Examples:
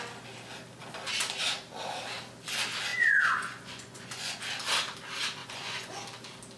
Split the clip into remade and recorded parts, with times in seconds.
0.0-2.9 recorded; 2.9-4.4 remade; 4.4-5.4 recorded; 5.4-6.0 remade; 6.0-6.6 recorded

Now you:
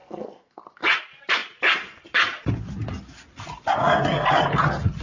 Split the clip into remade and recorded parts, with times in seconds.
0.0-0.6 remade; 0.6-5.0 recorded

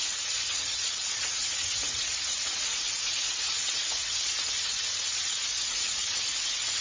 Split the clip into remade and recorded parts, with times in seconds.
0.0-6.8 remade